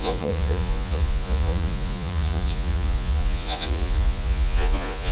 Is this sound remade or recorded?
remade